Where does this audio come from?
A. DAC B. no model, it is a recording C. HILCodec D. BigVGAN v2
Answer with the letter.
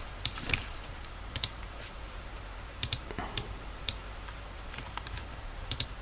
D